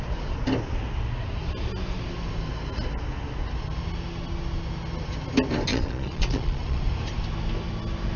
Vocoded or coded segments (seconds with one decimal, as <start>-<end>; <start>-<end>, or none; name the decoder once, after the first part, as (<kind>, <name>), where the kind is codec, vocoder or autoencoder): 5.7-6.8 (vocoder, Vocos)